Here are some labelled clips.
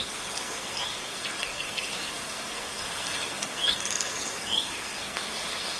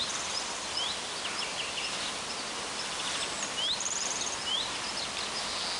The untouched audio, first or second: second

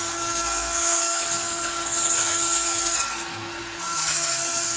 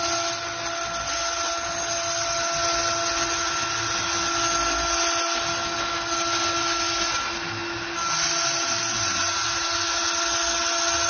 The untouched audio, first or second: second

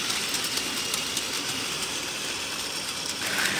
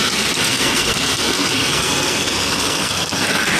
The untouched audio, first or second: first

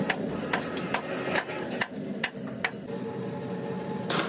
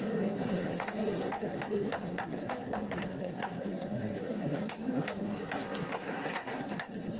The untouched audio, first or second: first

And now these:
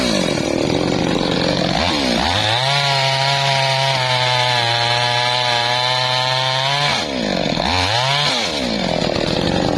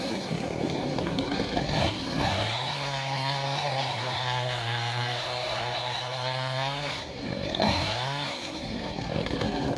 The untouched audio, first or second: first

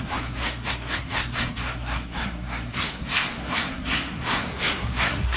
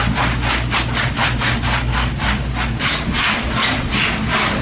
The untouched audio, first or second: second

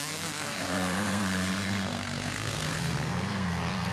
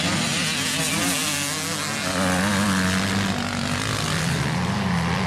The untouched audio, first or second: second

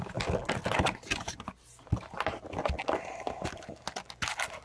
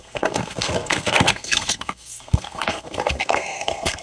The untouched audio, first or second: first